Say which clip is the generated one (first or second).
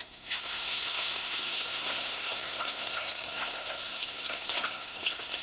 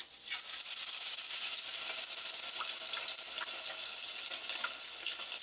first